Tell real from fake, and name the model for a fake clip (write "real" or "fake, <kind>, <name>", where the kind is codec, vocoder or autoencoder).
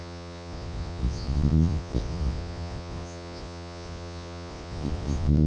fake, vocoder, Vocos